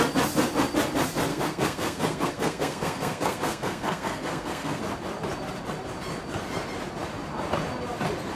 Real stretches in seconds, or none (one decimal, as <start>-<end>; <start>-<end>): 0.0-1.3; 4.8-8.4